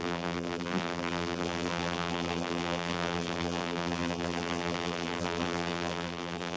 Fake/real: fake